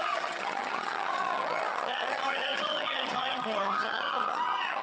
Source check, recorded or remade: remade